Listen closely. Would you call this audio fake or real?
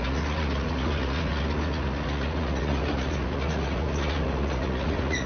fake